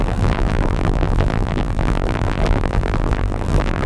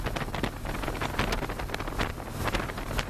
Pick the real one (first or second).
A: second